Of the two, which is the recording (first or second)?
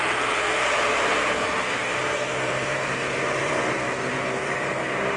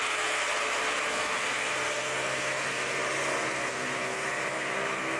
second